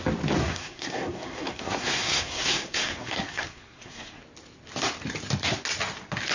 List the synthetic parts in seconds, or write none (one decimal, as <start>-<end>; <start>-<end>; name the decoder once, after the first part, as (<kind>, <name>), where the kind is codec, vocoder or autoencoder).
0.4-4.2 (codec, SNAC)